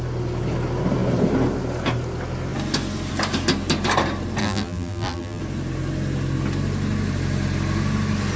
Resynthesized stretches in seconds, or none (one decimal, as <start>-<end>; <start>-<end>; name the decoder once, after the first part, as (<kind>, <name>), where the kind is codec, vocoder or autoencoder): 4.4-5.4 (vocoder, BigVGAN v2)